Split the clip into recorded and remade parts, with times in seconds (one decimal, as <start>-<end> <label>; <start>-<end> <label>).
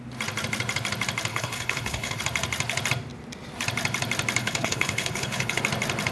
0.0-1.3 recorded; 1.3-2.2 remade; 2.2-4.4 recorded; 4.4-5.6 remade; 5.6-6.1 recorded